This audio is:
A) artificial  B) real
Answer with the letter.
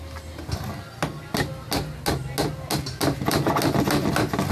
B